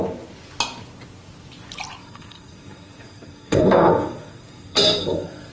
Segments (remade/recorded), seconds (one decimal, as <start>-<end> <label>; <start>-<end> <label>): 0.0-2.0 recorded; 2.0-5.5 remade